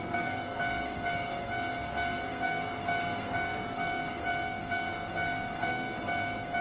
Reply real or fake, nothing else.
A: fake